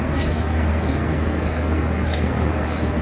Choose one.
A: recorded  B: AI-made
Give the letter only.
B